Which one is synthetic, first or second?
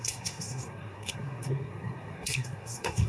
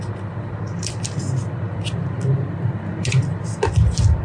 first